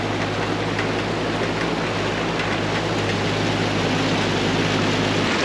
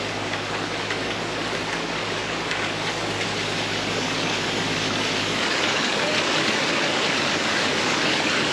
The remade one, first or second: second